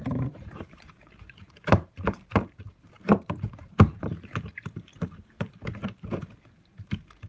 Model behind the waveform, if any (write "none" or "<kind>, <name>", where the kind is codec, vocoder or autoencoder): vocoder, BigVGAN v2